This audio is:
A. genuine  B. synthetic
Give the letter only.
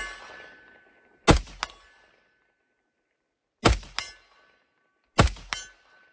A